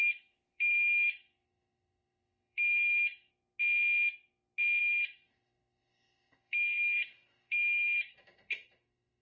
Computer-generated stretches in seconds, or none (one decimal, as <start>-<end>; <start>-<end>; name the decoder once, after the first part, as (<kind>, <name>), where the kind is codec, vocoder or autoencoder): 0.0-3.3 (autoencoder, DAC-VAE); 4.8-9.2